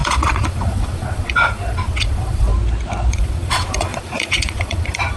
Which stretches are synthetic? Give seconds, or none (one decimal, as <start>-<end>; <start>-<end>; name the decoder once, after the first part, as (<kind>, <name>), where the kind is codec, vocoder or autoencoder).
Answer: 0.0-2.5 (vocoder, Vocos); 3.1-5.2